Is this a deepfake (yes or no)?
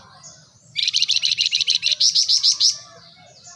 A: yes